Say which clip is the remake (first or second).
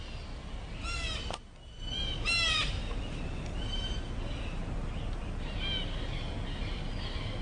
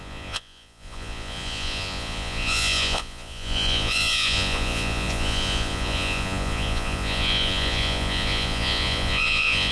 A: second